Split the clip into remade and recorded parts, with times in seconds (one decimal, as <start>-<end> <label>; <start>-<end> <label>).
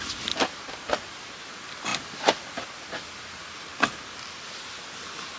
0.0-5.4 recorded